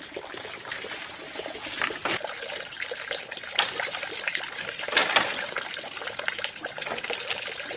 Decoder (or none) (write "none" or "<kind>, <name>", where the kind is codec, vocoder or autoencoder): vocoder, BigVGAN v2